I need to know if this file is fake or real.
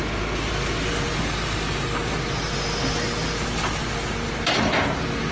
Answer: real